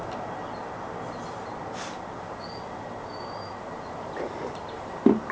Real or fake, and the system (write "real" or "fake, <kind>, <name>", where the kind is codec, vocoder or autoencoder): real